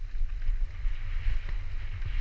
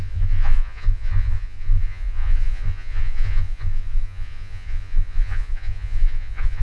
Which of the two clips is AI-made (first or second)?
second